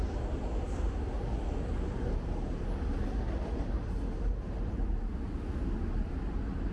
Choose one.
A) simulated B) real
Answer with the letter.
B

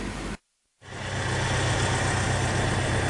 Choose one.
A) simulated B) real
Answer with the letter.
B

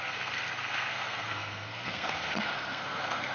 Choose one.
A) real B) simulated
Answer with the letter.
B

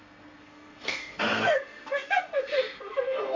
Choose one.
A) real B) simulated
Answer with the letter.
B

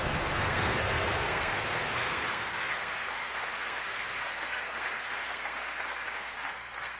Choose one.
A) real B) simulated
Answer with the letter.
B